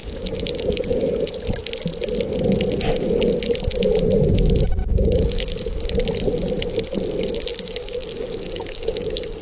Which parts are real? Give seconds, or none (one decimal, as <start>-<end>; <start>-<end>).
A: 1.0-4.8; 6.0-7.5